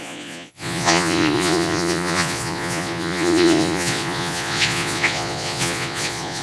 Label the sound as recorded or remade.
remade